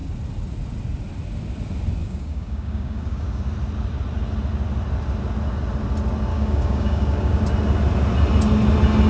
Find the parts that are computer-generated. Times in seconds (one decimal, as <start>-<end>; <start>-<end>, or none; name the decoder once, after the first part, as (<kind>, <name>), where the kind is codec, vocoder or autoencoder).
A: 2.0-3.4 (codec, DAC); 6.3-7.4